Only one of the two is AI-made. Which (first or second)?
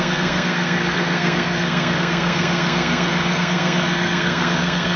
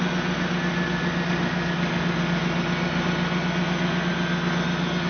first